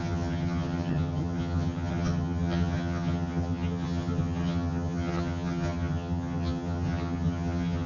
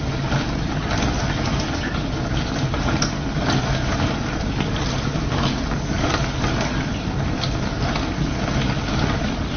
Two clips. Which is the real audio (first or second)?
second